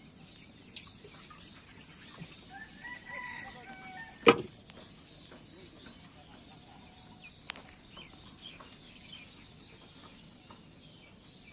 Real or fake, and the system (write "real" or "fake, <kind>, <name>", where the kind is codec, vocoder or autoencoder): real